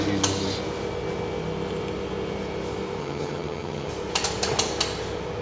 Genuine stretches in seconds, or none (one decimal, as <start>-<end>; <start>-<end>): 0.0-3.0; 3.9-5.4